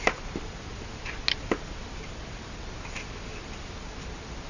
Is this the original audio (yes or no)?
yes